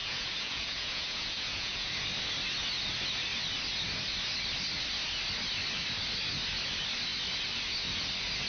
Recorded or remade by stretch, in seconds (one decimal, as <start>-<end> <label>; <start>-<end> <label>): 0.0-1.9 remade; 1.9-8.5 recorded